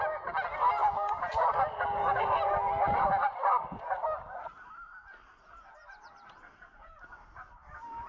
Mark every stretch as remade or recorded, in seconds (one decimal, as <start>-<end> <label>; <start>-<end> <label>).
0.0-8.1 recorded